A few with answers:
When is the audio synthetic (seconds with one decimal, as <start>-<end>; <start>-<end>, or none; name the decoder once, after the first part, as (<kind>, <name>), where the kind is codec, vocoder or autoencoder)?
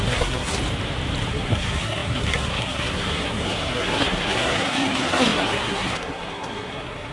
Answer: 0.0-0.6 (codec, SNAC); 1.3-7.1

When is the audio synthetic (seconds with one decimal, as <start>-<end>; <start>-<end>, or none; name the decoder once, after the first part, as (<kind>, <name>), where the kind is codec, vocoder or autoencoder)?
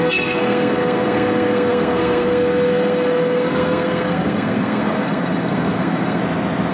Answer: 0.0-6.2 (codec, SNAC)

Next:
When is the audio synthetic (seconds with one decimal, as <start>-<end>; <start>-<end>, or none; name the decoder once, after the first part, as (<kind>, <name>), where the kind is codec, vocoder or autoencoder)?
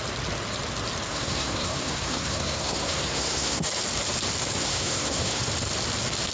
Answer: 1.1-3.7 (codec, SNAC); 4.6-5.4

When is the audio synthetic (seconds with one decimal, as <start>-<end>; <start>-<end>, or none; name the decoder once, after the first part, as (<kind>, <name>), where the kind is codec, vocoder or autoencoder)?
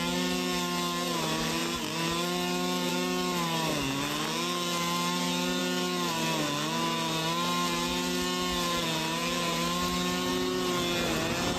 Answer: none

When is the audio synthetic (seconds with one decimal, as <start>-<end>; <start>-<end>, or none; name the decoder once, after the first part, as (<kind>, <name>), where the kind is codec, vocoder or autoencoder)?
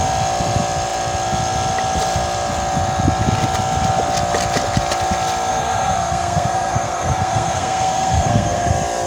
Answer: 5.5-8.7 (codec, SNAC)